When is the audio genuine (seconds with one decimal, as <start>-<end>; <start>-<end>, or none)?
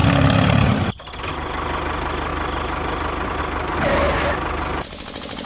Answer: 1.3-5.5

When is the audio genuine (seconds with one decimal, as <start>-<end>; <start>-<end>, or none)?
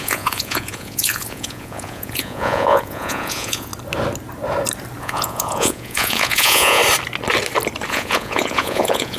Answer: 3.7-5.0; 6.8-7.9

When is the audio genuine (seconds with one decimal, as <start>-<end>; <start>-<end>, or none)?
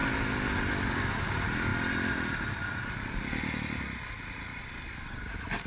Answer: 0.0-4.5; 5.2-5.7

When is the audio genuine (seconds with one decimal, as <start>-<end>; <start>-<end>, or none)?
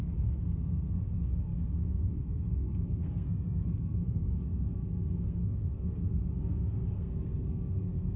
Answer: none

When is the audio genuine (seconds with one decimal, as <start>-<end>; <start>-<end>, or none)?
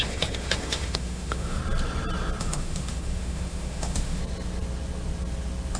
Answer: 1.6-2.4; 4.2-5.8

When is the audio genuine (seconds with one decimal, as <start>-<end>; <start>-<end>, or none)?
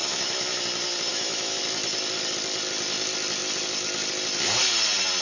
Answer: 0.6-1.1; 1.6-5.2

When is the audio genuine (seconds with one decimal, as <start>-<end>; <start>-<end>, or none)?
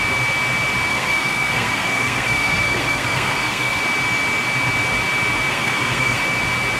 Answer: 0.0-0.9; 3.8-5.5; 6.2-6.8